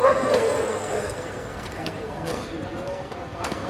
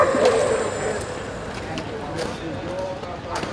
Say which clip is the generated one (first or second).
first